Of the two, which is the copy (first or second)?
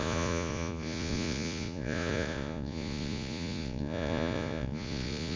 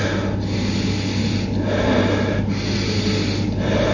first